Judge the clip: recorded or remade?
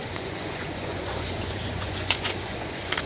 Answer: remade